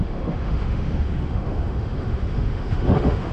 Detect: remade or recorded remade